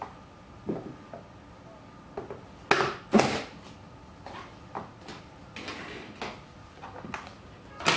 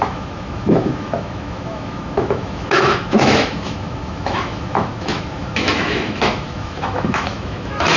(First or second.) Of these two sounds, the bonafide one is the first